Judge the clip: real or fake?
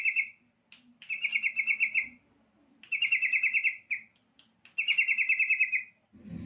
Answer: fake